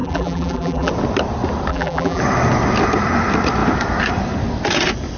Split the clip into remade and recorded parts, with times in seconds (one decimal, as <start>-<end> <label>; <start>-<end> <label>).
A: 0.0-0.9 remade; 0.9-1.7 recorded; 1.7-2.2 remade; 2.2-5.2 recorded